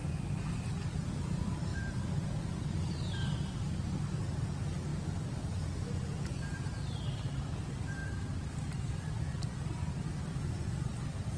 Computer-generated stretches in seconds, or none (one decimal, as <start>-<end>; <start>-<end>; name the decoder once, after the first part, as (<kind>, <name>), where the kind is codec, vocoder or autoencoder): 1.7-3.4 (vocoder, BigVGAN v2); 8.0-9.0